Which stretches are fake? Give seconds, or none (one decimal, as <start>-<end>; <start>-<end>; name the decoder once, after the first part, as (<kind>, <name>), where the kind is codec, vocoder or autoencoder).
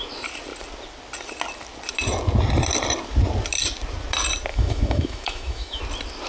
4.5-5.8 (autoencoder, DAC-VAE)